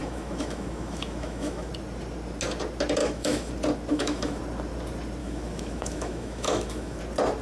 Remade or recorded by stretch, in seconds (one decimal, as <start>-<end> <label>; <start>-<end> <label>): 0.0-1.7 remade; 1.7-3.0 recorded; 3.0-3.5 remade; 3.5-3.9 recorded; 3.9-4.4 remade; 4.4-5.2 recorded; 5.2-7.0 remade; 7.0-7.4 recorded